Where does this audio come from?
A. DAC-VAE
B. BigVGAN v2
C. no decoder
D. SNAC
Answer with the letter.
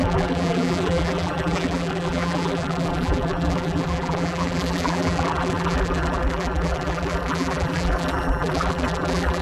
B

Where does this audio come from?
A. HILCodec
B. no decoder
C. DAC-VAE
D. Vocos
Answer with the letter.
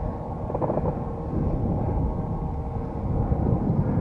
B